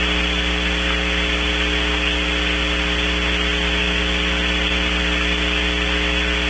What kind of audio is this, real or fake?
real